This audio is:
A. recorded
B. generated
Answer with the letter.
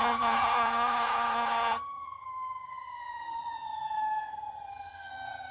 B